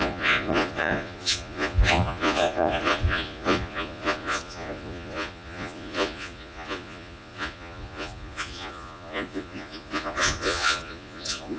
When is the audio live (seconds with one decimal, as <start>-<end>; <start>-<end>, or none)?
none